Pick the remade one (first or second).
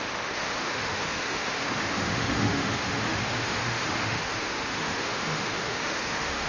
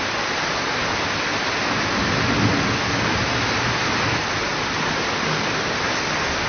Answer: first